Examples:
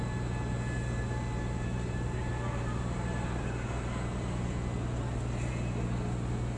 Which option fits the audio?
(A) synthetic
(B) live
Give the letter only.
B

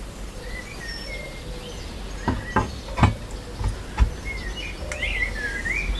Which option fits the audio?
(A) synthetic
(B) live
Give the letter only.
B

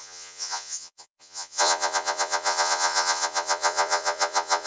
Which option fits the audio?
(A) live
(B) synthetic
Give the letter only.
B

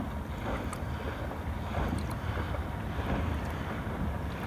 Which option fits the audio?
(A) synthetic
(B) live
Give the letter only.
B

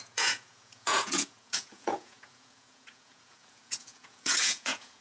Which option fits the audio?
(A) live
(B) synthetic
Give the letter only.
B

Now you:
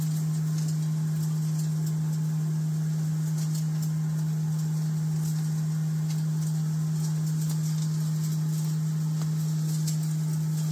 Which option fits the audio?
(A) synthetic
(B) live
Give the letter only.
B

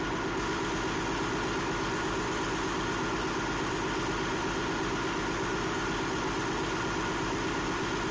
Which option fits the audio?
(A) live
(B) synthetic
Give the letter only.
A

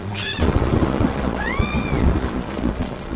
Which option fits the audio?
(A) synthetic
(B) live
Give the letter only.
A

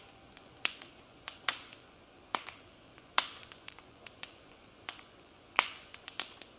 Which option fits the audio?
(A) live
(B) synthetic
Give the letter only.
B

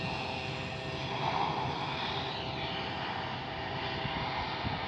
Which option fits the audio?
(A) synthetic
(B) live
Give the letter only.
B